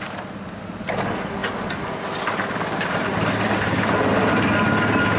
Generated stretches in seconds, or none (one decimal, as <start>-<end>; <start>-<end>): none